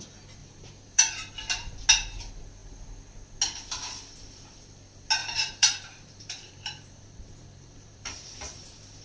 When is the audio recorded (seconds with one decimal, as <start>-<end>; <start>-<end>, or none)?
0.0-0.4; 1.3-5.2